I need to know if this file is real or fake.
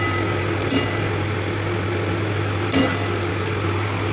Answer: real